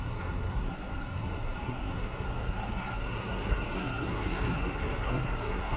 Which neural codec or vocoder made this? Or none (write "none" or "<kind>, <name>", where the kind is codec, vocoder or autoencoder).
codec, SNAC